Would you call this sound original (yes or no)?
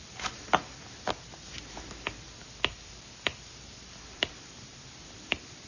no